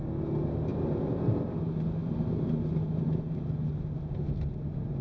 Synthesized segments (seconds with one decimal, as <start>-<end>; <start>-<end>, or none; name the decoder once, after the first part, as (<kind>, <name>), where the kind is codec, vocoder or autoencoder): 0.7-1.6 (vocoder, BigVGAN v2); 2.0-5.0